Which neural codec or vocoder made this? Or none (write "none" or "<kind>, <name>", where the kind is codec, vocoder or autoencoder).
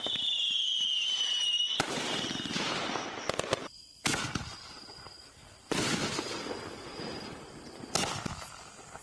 vocoder, BigVGAN v2